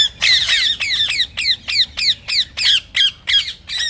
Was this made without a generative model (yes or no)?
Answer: yes